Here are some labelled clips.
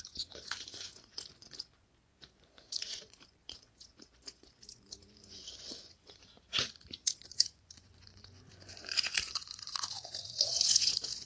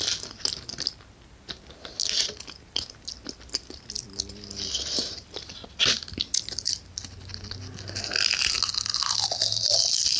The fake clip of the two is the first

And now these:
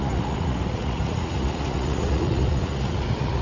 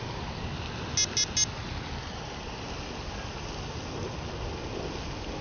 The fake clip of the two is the first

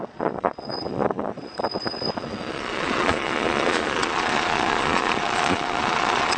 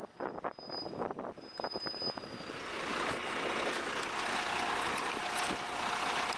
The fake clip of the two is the first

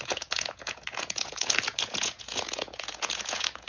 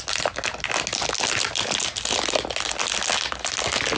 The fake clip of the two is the first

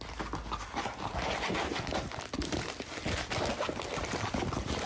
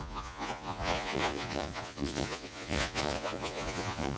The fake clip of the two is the second